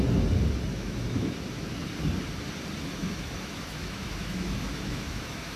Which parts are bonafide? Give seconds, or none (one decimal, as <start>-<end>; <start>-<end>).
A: 0.0-0.7; 1.8-3.0